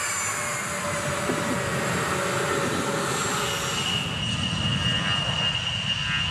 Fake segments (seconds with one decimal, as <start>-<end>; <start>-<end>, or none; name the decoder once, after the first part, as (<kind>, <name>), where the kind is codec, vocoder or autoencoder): 0.5-1.2 (vocoder, BigVGAN v2)